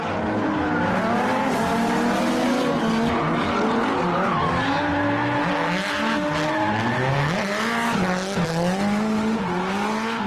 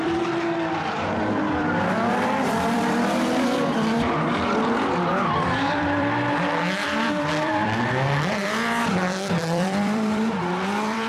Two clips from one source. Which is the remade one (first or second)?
second